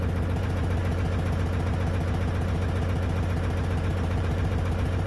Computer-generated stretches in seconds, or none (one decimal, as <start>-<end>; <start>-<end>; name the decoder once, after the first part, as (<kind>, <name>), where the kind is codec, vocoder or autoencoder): 0.0-0.8 (vocoder, BigVGAN v2); 3.9-5.1